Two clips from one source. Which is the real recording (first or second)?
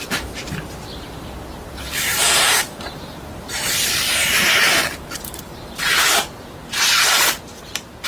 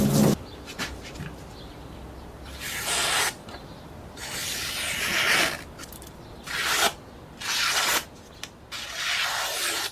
second